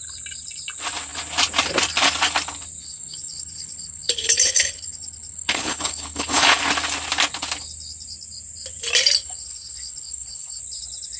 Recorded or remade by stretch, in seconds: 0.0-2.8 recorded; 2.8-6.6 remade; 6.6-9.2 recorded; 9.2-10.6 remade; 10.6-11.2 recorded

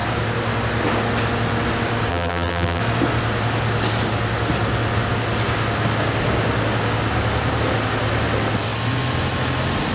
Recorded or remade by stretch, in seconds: 0.0-2.1 recorded; 2.1-2.8 remade; 2.8-9.9 recorded

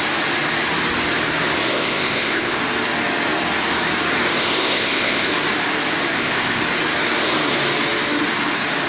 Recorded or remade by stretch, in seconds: 0.0-1.7 recorded; 1.7-2.6 remade; 2.6-4.4 recorded; 4.4-5.3 remade; 5.3-6.1 recorded; 6.1-6.6 remade; 6.6-8.9 recorded

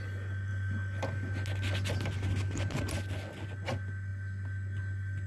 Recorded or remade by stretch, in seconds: 0.0-5.3 recorded

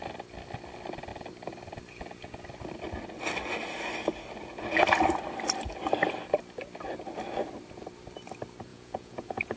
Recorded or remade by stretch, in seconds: 0.0-8.7 recorded; 8.7-9.6 remade

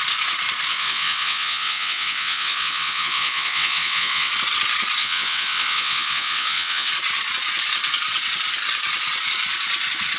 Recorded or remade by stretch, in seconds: 0.0-0.7 recorded; 0.7-4.3 remade; 4.3-5.0 recorded; 5.0-6.9 remade; 6.9-10.2 recorded

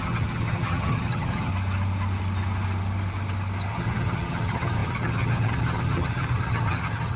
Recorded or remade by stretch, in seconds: 0.0-1.5 remade; 1.5-3.7 recorded; 3.7-7.2 remade

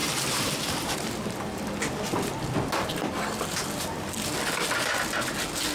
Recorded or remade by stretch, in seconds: 0.0-1.6 remade; 1.6-5.7 recorded